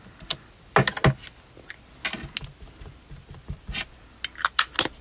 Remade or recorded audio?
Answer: recorded